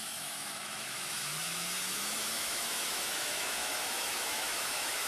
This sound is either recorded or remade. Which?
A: remade